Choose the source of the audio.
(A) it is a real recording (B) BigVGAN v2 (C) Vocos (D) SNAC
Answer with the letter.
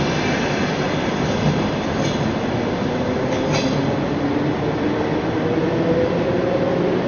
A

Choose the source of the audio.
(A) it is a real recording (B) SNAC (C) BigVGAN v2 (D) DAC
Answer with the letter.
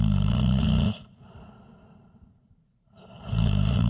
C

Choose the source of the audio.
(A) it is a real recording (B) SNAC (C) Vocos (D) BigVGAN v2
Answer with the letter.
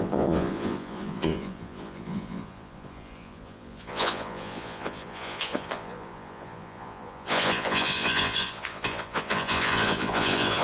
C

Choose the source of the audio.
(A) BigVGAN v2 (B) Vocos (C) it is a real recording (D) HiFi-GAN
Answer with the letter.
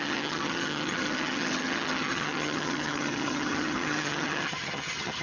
D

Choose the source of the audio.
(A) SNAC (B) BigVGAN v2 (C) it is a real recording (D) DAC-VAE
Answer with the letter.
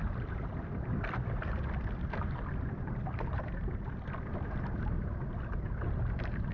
B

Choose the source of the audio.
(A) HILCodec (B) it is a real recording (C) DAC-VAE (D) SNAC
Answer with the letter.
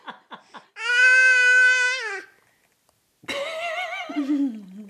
B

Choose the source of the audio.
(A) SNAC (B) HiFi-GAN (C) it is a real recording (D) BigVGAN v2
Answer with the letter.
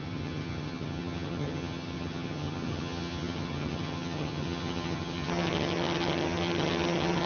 B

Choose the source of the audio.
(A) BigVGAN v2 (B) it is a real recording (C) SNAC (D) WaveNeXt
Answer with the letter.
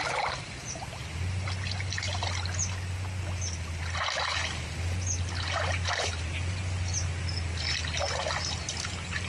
B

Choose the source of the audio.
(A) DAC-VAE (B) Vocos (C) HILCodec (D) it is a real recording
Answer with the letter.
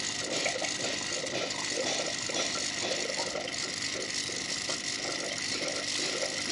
D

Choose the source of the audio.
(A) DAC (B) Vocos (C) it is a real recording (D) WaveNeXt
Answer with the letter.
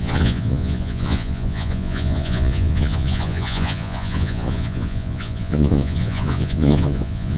B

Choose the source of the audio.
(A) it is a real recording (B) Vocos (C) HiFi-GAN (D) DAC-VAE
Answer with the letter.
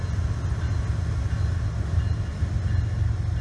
A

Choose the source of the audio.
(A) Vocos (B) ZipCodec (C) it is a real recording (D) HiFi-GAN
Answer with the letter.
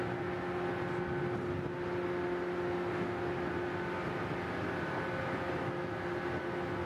C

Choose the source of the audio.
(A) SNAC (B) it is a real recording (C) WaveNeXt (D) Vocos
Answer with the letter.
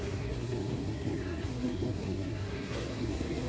A